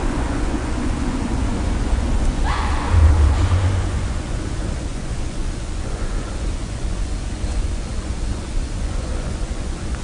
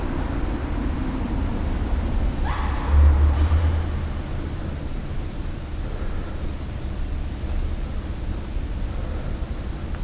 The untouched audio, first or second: second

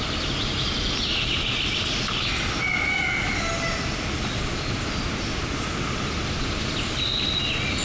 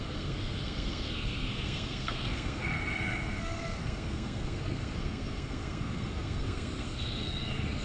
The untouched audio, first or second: first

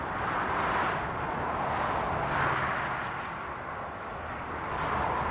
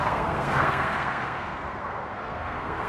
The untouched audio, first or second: first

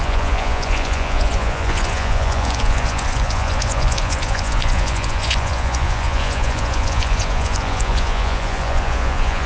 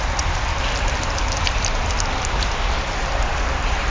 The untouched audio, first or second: second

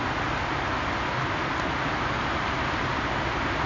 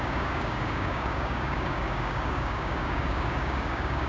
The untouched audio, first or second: first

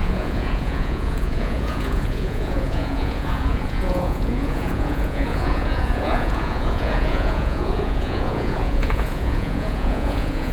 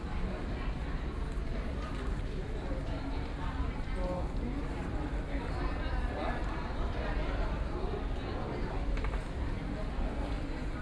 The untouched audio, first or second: second